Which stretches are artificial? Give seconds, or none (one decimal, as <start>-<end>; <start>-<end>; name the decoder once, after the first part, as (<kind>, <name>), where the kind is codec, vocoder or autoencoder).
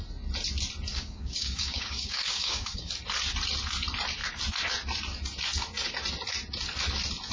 0.9-2.9 (codec, DAC)